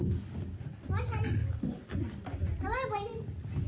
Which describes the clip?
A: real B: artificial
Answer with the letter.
A